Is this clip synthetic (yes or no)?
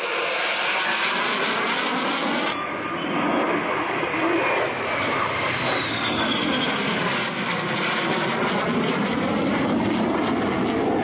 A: no